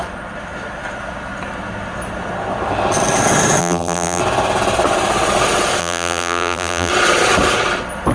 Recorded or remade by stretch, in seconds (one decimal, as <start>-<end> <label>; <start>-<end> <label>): 0.0-3.6 recorded; 3.6-4.2 remade; 4.2-5.8 recorded; 5.8-6.9 remade; 6.9-8.1 recorded